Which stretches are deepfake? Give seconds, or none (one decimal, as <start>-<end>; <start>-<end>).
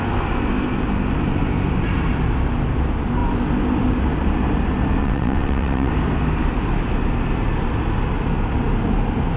5.0-5.9